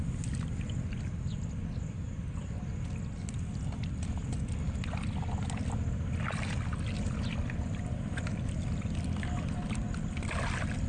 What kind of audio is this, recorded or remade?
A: recorded